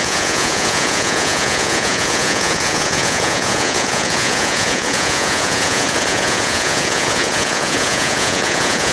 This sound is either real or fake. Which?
fake